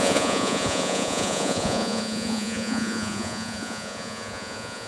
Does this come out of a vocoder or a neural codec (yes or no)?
yes